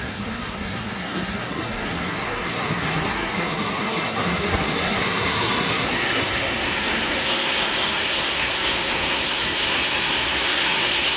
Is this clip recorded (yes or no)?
no